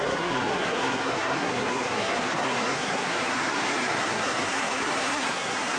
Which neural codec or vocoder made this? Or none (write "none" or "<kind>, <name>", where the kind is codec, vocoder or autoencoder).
codec, SNAC